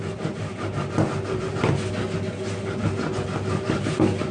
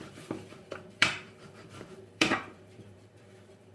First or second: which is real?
first